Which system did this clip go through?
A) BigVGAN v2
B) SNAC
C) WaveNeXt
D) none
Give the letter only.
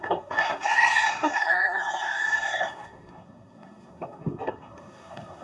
B